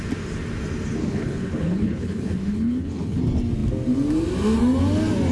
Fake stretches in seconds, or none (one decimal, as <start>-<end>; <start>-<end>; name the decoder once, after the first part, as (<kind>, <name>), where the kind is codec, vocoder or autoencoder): 1.0-3.2 (codec, HILCodec)

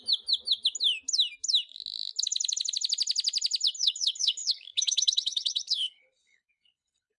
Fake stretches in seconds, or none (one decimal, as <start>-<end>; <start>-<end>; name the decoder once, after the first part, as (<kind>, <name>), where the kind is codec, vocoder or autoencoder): 3.8-7.2 (codec, HILCodec)

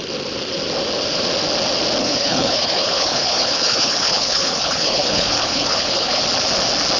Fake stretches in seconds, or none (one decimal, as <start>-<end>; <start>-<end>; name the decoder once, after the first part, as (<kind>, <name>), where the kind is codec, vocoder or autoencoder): 2.0-6.2 (codec, HILCodec)

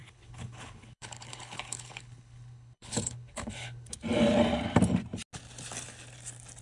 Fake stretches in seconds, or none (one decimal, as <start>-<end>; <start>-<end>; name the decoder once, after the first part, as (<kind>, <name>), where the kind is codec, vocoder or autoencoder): 0.0-4.0 (codec, HILCodec)

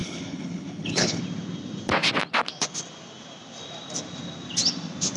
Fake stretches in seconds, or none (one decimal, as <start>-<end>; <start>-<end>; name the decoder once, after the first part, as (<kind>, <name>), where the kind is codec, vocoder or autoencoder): 0.0-1.2 (codec, HILCodec)

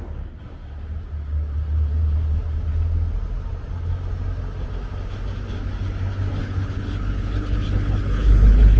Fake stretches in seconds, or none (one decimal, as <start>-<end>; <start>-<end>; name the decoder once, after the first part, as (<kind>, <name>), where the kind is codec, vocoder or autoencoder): 6.4-8.8 (codec, HILCodec)

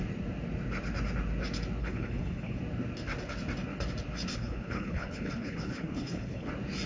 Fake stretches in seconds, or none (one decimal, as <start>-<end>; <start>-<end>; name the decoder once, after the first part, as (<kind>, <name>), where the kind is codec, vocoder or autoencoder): 1.8-2.6 (codec, HILCodec); 4.3-6.5